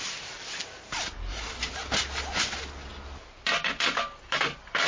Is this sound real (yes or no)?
yes